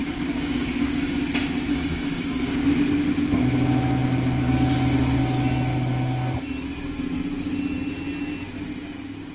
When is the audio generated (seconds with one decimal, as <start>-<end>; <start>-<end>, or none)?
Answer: 0.0-1.2; 1.7-2.6